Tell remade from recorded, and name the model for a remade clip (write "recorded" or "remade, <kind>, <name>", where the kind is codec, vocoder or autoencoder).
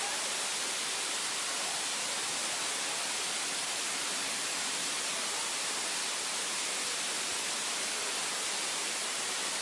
recorded